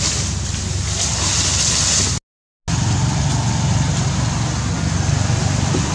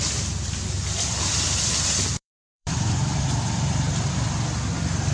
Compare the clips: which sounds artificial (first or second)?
second